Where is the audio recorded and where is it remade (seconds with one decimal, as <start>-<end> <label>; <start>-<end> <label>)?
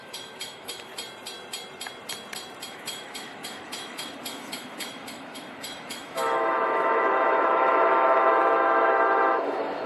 0.0-0.9 remade; 0.9-2.7 recorded; 2.7-9.9 remade